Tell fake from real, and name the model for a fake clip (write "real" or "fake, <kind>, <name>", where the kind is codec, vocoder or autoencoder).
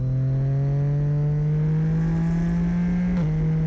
real